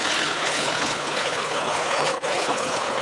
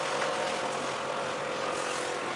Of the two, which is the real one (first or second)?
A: second